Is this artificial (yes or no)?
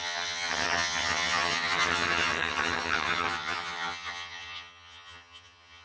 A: yes